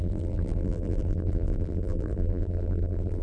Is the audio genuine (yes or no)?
no